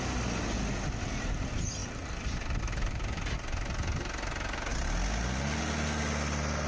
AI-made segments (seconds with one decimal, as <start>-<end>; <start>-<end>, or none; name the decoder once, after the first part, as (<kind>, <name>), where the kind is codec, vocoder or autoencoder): none